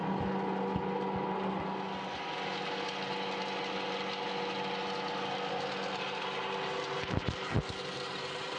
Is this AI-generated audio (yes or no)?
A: no